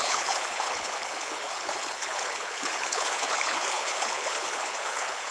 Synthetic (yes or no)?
yes